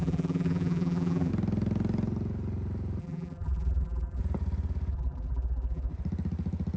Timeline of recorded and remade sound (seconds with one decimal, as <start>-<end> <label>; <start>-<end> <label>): 0.0-1.3 remade; 1.3-3.0 recorded; 3.0-4.2 remade; 4.2-4.9 recorded; 4.9-5.9 remade; 5.9-6.8 recorded

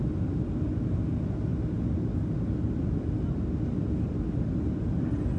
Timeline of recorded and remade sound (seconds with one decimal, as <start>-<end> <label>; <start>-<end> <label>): 0.0-5.4 recorded

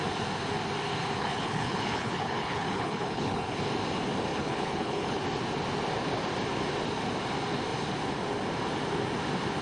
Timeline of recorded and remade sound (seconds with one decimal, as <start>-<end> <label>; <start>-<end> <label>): 0.0-1.2 recorded; 1.2-3.6 remade; 3.6-4.3 recorded; 4.3-5.2 remade; 5.2-9.6 recorded

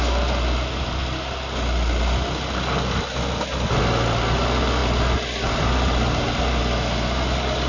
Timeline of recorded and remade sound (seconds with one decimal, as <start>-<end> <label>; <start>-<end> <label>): 0.0-7.7 recorded

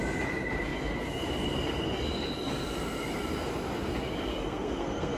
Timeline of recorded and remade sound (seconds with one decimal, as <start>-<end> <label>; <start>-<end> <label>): 0.0-4.3 recorded; 4.3-5.2 remade

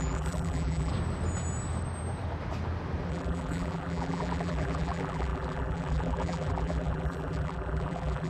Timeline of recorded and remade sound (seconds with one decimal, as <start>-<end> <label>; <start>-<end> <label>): 0.0-0.9 remade; 0.9-3.1 recorded; 3.1-8.3 remade